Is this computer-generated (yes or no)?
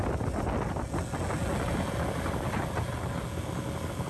no